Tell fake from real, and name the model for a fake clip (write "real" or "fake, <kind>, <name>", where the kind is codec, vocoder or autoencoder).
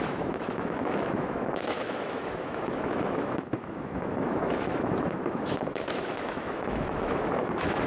fake, autoencoder, DAC-VAE